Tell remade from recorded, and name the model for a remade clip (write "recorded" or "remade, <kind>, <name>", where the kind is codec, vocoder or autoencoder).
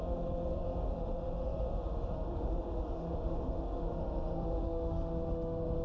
remade, autoencoder, DAC-VAE